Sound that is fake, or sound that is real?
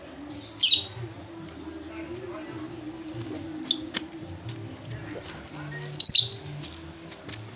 real